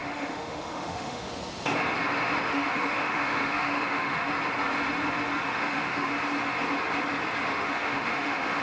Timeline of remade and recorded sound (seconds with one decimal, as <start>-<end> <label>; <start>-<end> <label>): 0.0-1.3 remade; 1.3-2.5 recorded; 2.5-4.3 remade; 4.3-5.5 recorded; 5.5-6.1 remade; 6.1-7.5 recorded; 7.5-8.6 remade